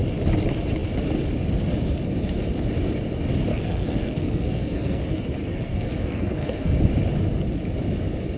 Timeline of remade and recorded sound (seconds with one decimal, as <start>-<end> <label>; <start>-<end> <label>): 0.0-3.5 recorded; 3.5-5.0 remade; 5.0-5.4 recorded; 5.4-6.8 remade; 6.8-8.4 recorded